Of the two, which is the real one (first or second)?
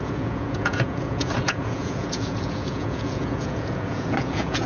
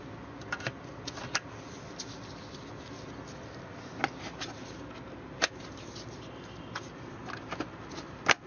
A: second